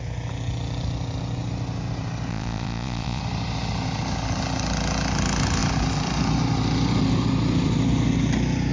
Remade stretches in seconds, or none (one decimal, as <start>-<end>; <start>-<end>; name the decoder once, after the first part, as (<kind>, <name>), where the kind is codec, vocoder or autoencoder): 2.3-3.2 (vocoder, Vocos)